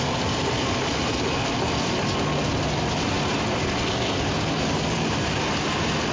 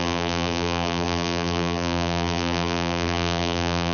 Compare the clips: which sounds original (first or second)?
first